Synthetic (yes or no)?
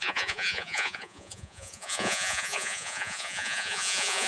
yes